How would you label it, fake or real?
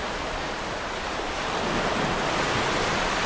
real